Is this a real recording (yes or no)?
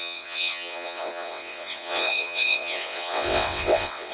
no